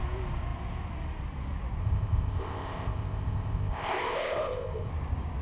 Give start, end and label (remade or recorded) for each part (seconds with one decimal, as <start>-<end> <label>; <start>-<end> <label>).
0.0-1.8 recorded; 1.8-4.9 remade; 4.9-5.4 recorded